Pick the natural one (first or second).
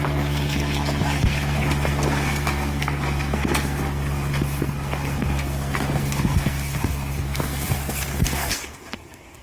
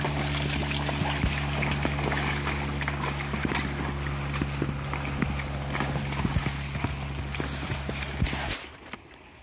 second